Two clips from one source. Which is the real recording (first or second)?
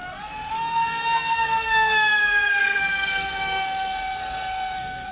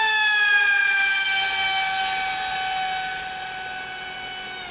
second